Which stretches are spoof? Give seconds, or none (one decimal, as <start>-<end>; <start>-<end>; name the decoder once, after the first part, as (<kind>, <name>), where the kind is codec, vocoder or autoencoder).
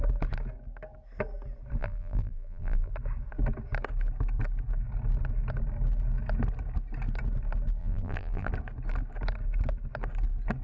1.8-2.9 (vocoder, BigVGAN v2); 7.8-8.5